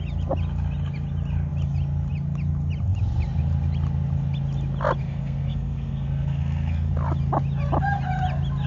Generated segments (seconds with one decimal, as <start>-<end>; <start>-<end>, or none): 5.0-6.9